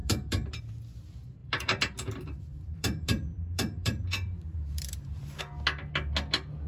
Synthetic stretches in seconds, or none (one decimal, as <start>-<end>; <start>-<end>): 0.0-0.6; 1.4-5.4